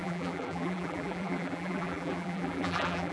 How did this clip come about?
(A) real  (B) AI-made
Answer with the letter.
B